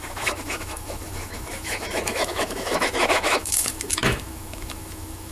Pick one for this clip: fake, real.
fake